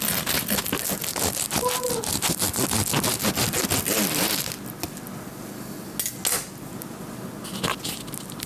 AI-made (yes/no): no